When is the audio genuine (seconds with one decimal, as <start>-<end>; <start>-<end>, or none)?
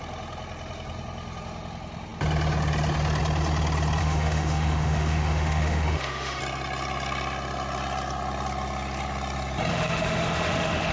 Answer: 0.0-4.0; 6.4-9.7